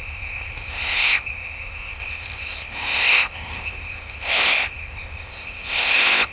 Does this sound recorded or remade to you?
remade